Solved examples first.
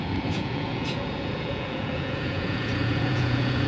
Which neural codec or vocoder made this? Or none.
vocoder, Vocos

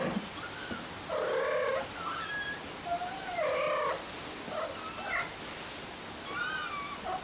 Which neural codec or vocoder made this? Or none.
none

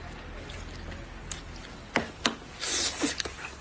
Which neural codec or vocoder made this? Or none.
none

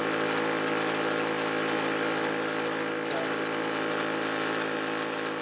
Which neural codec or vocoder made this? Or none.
none